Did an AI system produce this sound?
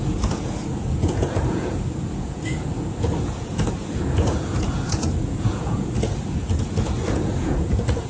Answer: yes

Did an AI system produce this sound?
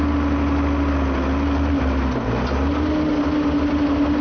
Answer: no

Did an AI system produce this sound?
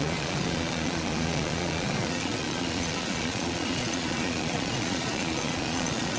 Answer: yes